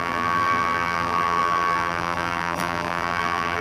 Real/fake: fake